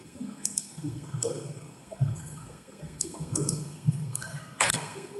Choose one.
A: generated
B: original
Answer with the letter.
A